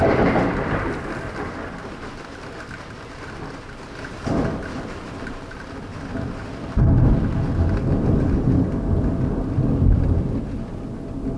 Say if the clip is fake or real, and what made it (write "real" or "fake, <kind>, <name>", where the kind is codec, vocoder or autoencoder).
real